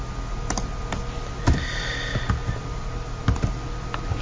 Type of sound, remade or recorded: recorded